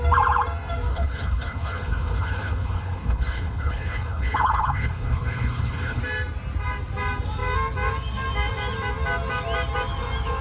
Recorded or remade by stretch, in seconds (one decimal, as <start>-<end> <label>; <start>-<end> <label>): 0.0-0.9 recorded; 0.9-6.0 remade; 6.0-10.4 recorded